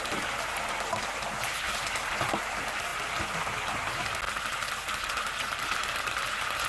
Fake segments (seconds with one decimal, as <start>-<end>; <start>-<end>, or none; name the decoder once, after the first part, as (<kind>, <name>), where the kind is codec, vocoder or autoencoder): none